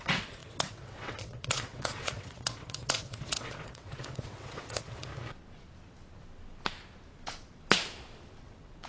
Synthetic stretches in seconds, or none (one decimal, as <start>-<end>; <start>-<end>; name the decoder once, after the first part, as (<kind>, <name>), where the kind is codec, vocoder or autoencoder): 0.0-5.1 (vocoder, WaveNeXt); 8.4-8.9